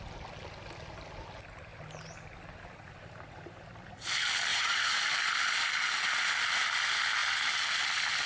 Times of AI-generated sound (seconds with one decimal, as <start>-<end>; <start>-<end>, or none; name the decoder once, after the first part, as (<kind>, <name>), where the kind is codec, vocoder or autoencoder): 4.5-5.0 (vocoder, Vocos)